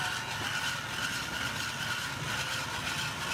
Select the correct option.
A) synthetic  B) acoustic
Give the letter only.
B